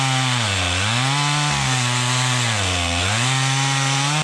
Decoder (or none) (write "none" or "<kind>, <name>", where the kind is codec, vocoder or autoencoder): none